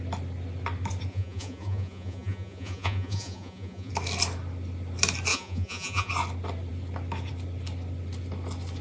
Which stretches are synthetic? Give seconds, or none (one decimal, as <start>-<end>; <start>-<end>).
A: 1.1-3.9; 5.3-6.1